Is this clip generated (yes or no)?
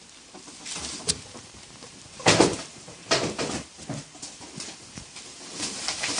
no